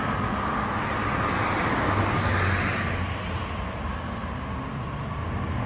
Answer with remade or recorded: recorded